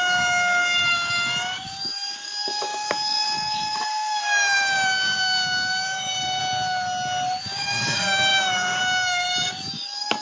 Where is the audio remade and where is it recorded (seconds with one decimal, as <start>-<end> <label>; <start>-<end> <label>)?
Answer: 0.0-6.4 remade; 6.4-7.4 recorded; 7.4-10.2 remade